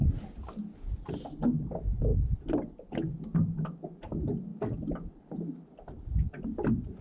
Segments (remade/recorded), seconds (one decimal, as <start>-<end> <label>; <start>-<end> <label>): 0.0-7.0 recorded